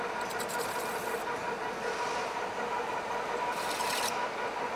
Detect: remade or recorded remade